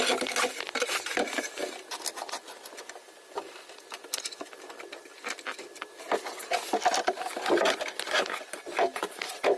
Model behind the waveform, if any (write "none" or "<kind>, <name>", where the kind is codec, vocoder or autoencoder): none